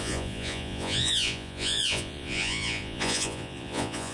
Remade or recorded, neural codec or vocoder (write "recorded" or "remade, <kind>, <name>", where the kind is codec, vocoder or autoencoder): remade, vocoder, Vocos